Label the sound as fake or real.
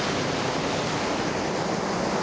real